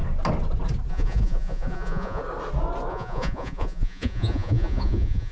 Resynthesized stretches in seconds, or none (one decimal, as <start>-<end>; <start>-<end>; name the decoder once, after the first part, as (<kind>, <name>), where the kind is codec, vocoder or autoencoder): 0.9-2.2 (vocoder, Vocos); 2.9-5.3

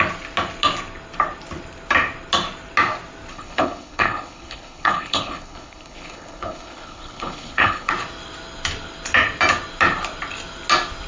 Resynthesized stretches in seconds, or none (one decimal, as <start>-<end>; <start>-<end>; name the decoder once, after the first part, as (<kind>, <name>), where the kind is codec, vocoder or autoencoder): 3.3-7.9 (codec, HILCodec)

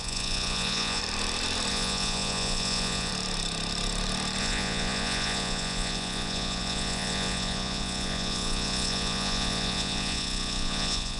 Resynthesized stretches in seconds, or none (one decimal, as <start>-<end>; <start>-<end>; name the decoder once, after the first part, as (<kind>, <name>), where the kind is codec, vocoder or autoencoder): 0.0-1.0 (vocoder, Vocos); 1.7-3.1; 4.4-11.2

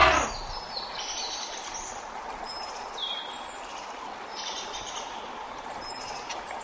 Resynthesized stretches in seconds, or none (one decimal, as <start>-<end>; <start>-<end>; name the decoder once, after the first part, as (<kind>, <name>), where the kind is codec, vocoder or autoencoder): 1.9-5.9 (vocoder, BigVGAN v2)

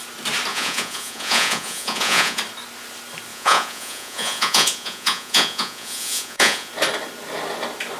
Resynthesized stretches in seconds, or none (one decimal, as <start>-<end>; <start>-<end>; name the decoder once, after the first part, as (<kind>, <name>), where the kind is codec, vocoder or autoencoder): 0.5-2.4 (vocoder, Vocos); 3.3-6.7

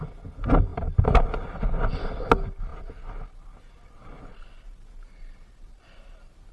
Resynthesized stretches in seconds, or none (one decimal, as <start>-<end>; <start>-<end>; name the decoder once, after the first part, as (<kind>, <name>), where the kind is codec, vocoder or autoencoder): none

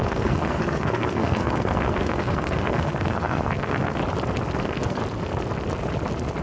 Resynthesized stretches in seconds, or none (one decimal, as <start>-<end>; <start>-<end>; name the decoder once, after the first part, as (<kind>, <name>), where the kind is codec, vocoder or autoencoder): 0.0-4.0 (codec, SNAC); 4.6-5.0

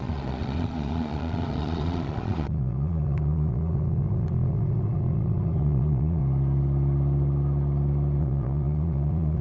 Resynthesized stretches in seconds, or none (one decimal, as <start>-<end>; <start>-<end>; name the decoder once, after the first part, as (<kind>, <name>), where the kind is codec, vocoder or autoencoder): 0.0-6.2 (vocoder, Vocos); 8.2-9.4